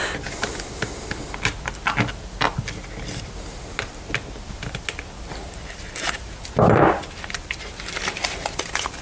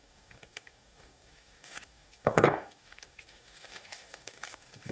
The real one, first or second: first